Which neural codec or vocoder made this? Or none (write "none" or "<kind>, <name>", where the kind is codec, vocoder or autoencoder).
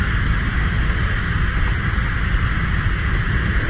none